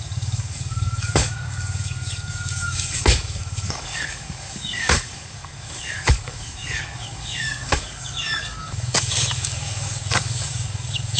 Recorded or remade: remade